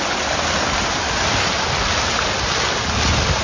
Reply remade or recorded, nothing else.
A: recorded